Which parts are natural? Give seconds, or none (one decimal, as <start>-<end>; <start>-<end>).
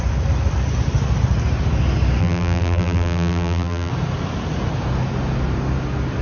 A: 0.0-2.2; 3.9-6.2